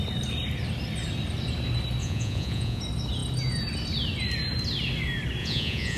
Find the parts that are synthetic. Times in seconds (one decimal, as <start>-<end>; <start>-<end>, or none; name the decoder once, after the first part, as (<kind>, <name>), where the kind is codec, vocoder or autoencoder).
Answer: 2.0-2.8 (vocoder, Vocos); 5.4-6.0